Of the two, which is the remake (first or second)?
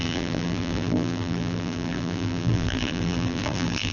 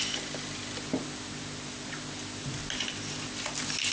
first